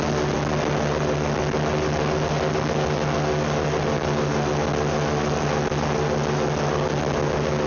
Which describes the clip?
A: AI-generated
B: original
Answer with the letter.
B